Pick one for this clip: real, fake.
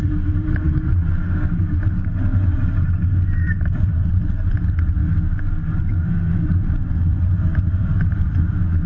fake